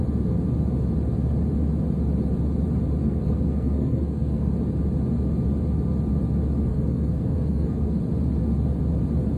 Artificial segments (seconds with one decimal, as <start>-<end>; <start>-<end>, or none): 3.0-4.5; 6.7-8.0